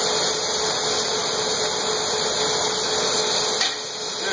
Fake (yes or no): no